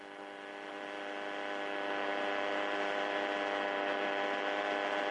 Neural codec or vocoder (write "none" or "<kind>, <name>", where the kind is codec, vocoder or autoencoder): none